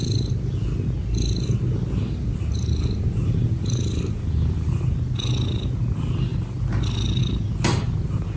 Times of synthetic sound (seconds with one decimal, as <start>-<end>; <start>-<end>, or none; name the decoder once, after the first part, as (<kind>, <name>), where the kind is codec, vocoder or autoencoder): 6.3-7.2 (vocoder, BigVGAN v2)